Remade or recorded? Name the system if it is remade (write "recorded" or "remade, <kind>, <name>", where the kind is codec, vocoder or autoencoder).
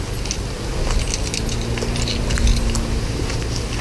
recorded